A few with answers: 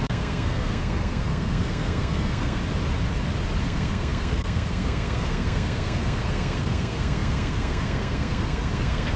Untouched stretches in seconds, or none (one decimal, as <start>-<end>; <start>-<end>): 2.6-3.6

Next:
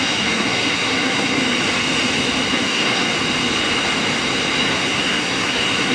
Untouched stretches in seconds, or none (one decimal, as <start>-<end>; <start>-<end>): 1.4-2.5; 3.1-4.7

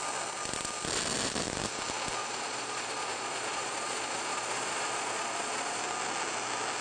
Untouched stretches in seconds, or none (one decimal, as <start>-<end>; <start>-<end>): 0.0-2.2; 5.8-6.8

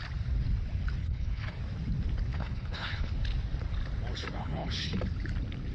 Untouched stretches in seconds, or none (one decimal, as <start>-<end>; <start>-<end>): 0.0-1.0; 1.6-2.3; 3.1-4.4; 5.0-5.7